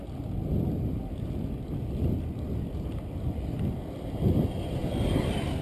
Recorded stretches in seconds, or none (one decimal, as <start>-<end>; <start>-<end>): 0.0-5.6